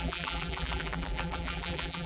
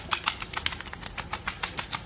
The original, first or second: second